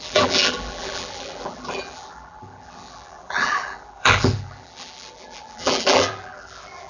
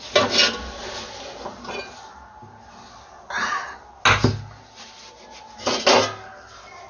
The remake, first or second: first